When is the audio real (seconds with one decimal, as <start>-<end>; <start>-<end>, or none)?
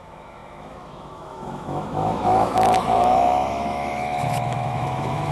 none